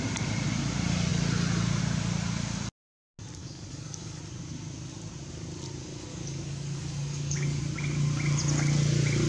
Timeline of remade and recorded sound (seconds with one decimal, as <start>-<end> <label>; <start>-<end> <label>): 0.0-3.4 recorded; 3.4-4.2 remade; 4.2-6.1 recorded; 6.1-7.6 remade; 7.6-9.3 recorded